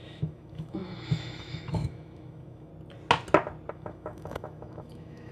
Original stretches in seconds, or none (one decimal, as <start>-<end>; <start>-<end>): 2.7-3.7